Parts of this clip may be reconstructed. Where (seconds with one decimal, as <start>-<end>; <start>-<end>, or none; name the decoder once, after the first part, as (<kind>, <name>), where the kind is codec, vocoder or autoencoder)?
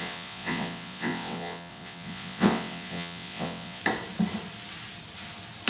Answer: 0.0-3.8 (vocoder, WaveNeXt)